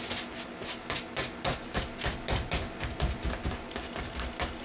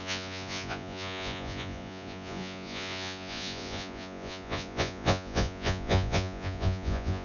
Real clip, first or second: first